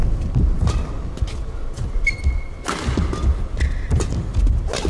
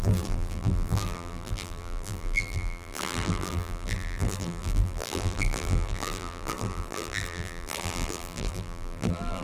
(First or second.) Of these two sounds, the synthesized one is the second